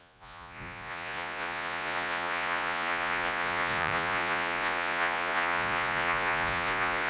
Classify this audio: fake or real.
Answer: fake